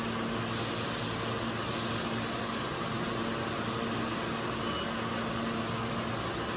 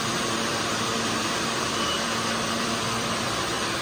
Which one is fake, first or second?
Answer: second